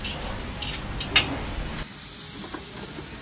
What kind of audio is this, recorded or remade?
recorded